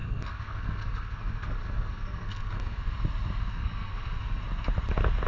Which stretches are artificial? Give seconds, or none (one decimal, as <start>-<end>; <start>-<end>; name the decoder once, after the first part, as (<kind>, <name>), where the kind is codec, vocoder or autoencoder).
0.0-2.9 (codec, SNAC); 3.4-4.4